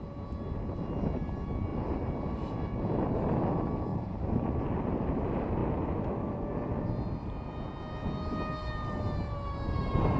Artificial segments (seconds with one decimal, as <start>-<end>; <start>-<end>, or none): 1.7-3.1; 3.9-4.5